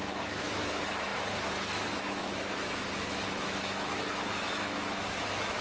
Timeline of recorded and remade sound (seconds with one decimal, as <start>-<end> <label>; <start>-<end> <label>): 0.0-5.6 remade